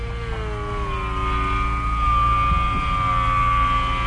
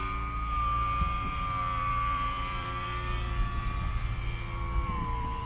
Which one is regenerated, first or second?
second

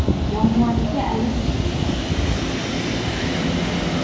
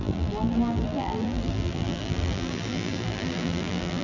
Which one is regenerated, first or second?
second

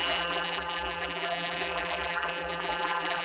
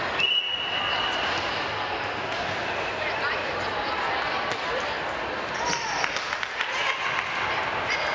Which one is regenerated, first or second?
first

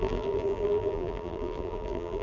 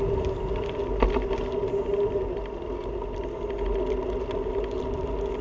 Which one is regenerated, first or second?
first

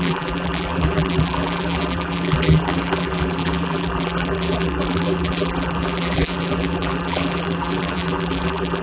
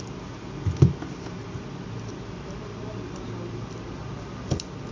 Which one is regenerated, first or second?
first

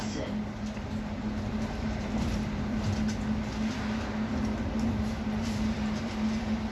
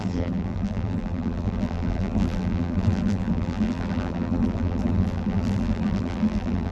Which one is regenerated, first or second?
second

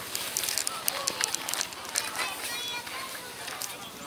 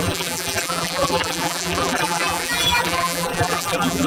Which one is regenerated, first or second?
second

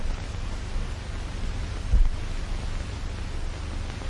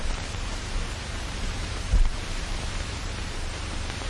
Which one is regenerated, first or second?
second